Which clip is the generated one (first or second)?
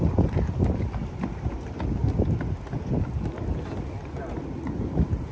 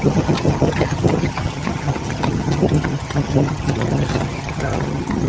second